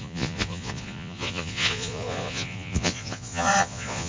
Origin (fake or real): fake